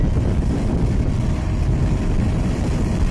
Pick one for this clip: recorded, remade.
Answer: recorded